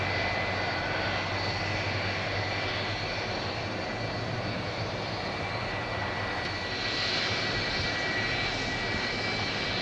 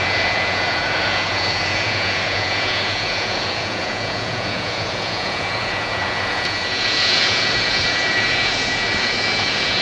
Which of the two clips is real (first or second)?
first